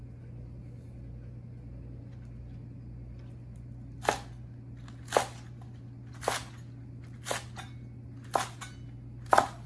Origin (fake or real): real